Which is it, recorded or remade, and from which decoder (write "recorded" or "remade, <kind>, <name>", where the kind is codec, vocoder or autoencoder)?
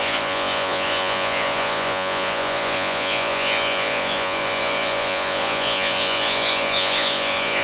remade, vocoder, Vocos